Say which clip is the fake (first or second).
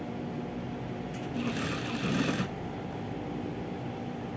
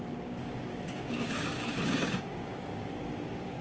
second